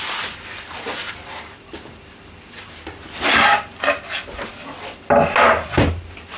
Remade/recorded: remade